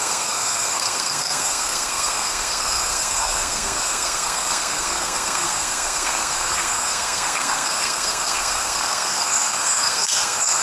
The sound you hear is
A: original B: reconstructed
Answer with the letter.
B